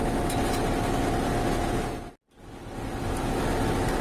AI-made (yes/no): no